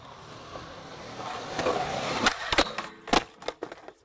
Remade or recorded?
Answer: recorded